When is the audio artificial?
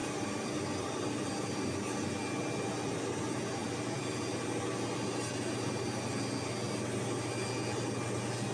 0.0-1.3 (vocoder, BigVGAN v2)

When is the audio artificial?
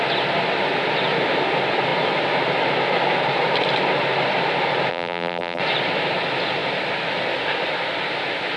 4.9-5.6 (vocoder, BigVGAN v2)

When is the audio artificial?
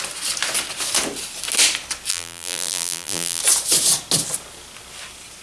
2.1-3.4 (vocoder, BigVGAN v2)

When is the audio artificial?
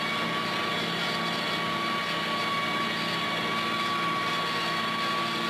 none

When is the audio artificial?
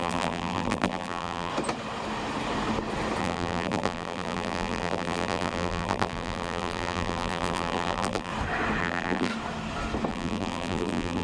0.0-1.5 (vocoder, BigVGAN v2); 3.2-8.3; 8.8-9.3; 10.1-11.2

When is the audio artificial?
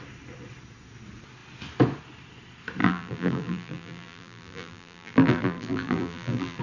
2.8-6.6 (vocoder, BigVGAN v2)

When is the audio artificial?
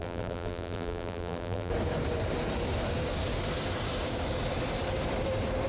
0.0-1.7 (vocoder, BigVGAN v2)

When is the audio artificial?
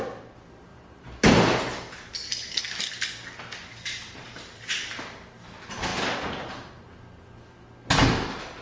0.7-2.8 (vocoder, BigVGAN v2); 3.6-5.3